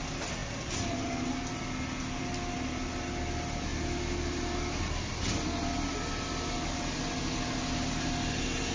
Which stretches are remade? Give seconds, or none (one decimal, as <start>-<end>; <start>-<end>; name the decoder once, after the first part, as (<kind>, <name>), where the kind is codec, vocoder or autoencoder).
none